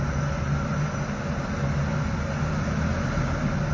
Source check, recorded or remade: recorded